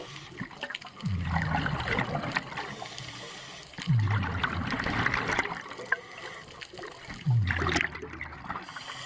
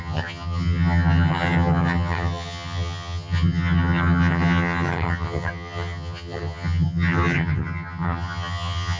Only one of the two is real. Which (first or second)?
first